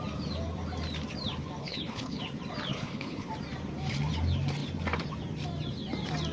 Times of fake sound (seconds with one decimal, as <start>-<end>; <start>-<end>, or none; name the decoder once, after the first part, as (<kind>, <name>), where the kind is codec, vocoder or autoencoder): 1.6-2.2 (codec, HILCodec); 2.7-3.3

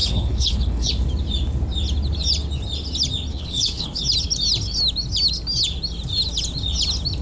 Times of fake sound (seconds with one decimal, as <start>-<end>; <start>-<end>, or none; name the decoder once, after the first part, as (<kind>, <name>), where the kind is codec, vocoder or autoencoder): 0.0-0.9 (codec, HILCodec); 3.3-4.0